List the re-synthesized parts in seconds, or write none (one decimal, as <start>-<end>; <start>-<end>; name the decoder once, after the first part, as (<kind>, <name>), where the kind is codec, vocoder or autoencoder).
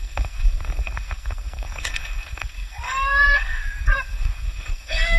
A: 0.0-5.2 (codec, SNAC)